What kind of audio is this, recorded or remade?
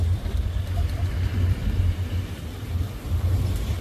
remade